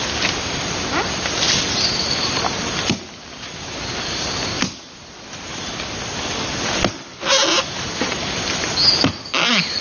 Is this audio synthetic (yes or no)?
no